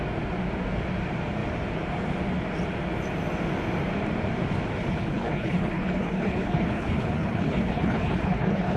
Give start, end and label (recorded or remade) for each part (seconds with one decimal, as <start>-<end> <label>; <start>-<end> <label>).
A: 0.0-4.8 recorded; 4.8-8.8 remade